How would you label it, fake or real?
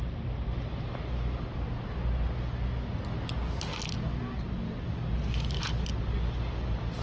real